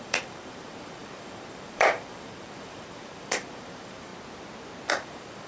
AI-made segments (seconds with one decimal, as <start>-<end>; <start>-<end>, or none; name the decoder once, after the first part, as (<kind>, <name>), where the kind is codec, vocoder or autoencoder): 0.0-4.1 (vocoder, BigVGAN v2); 4.9-5.5